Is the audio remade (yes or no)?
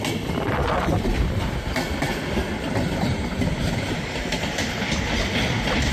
no